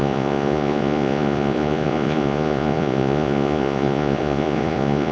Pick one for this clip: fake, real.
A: fake